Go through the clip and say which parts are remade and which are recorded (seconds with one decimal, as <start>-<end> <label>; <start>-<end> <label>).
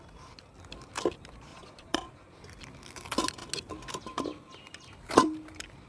0.0-1.5 recorded; 1.5-2.4 remade; 2.4-5.9 recorded